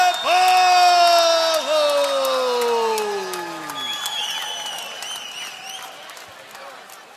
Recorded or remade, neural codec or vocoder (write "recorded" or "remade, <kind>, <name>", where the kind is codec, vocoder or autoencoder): recorded